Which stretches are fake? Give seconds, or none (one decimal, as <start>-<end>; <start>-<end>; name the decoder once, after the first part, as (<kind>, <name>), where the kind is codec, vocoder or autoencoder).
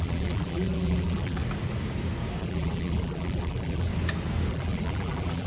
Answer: 0.0-1.4 (vocoder, BigVGAN v2); 2.4-3.9; 4.5-5.5